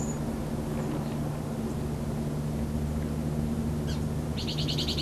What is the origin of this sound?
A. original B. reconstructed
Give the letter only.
A